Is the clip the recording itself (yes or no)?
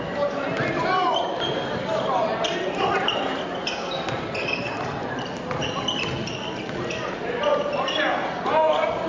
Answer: yes